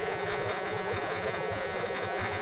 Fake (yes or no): yes